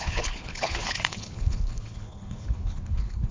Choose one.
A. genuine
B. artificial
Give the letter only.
B